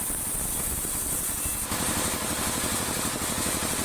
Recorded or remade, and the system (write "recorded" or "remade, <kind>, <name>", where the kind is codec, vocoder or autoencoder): recorded